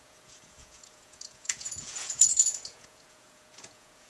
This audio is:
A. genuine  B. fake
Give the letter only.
B